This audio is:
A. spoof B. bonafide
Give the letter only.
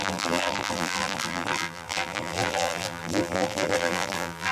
A